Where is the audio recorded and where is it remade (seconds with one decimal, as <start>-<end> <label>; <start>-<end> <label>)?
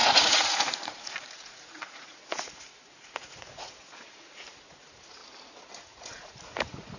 0.0-5.2 remade; 5.2-5.8 recorded; 5.8-7.0 remade